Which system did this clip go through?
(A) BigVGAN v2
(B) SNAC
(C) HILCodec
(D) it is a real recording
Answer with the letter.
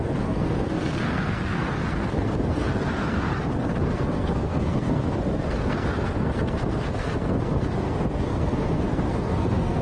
B